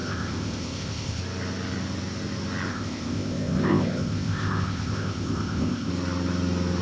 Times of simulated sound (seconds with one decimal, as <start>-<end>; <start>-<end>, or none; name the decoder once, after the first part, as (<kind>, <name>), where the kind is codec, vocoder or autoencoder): 0.0-1.2 (codec, ZipCodec); 2.7-5.9